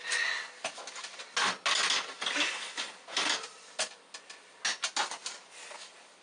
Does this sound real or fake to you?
real